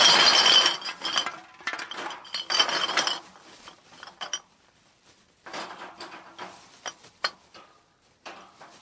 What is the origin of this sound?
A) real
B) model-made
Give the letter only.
A